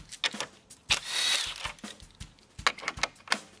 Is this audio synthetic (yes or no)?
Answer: no